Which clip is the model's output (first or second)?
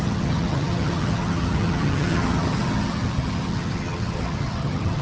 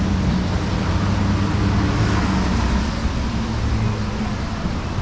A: first